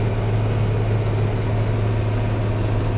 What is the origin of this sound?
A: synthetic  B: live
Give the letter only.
B